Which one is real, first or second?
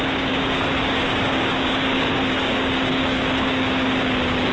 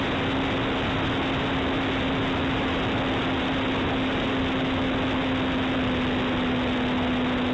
second